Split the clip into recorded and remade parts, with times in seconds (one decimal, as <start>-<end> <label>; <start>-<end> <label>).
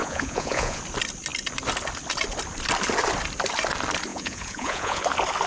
0.0-0.8 remade; 0.8-4.1 recorded; 4.1-5.0 remade; 5.0-5.5 recorded